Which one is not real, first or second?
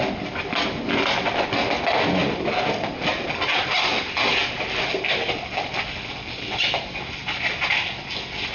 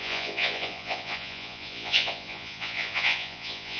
second